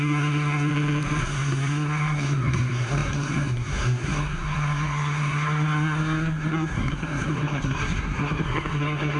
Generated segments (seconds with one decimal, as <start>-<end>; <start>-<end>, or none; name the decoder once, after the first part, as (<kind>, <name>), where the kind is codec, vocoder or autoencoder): 0.0-0.7 (codec, SNAC); 1.2-9.2